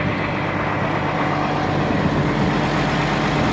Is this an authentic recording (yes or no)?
yes